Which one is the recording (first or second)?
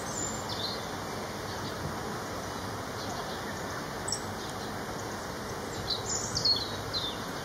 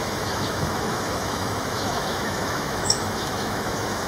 first